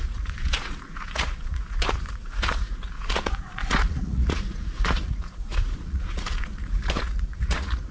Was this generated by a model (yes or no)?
yes